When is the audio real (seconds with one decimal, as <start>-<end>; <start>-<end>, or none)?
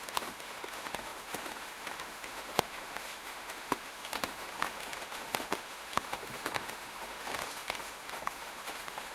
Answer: none